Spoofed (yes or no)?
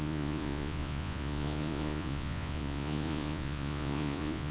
yes